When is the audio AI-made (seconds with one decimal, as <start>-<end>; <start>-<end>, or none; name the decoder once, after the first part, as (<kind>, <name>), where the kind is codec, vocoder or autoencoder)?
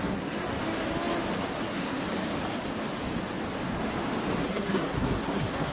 0.0-0.5 (codec, SNAC); 1.6-2.0; 4.4-5.7